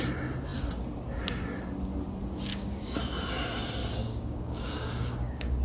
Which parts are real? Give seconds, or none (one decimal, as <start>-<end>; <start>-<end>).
0.0-2.5; 3.0-3.8